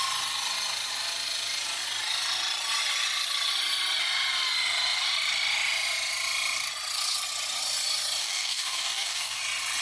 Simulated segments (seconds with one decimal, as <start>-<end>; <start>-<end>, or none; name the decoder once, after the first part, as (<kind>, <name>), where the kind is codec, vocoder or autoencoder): 8.2-9.4 (codec, DAC)